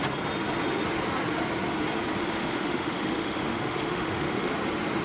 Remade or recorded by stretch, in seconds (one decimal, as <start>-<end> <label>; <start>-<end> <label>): 0.0-2.2 recorded; 2.2-4.5 remade; 4.5-5.0 recorded